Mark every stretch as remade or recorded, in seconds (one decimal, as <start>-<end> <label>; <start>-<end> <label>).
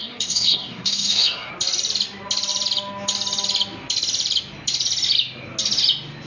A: 0.0-1.5 remade; 1.5-6.3 recorded